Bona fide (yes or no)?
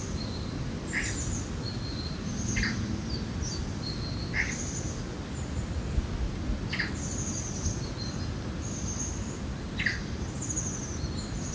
yes